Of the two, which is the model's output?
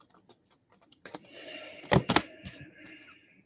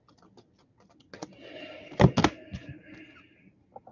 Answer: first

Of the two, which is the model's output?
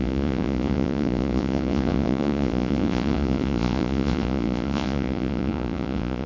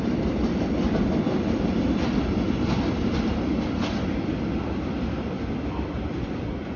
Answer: first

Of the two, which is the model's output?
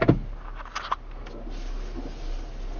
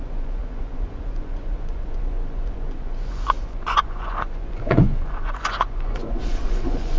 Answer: second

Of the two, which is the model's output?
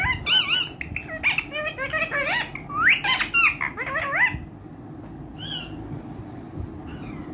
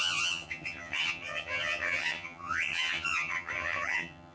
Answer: second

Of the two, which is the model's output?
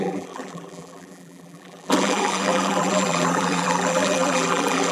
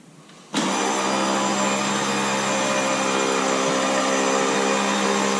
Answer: first